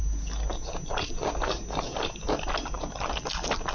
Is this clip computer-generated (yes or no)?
no